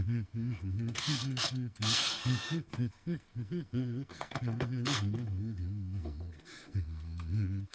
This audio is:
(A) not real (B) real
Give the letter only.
A